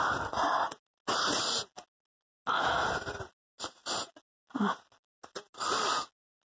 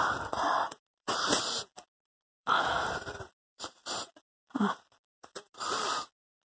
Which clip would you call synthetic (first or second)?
second